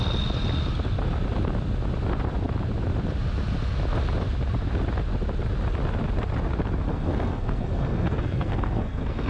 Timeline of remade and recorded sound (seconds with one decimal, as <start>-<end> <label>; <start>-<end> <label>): 0.0-6.9 recorded; 6.9-9.3 remade